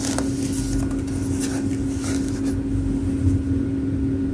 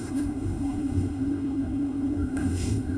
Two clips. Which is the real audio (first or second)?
first